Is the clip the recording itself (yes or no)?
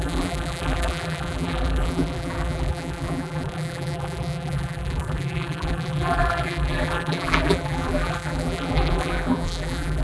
no